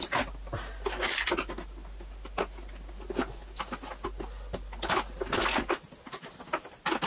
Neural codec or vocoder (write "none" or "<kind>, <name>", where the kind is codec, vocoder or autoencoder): none